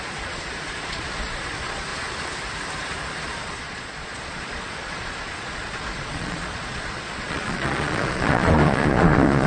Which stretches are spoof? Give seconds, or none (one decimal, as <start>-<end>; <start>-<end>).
0.0-1.9; 3.4-9.5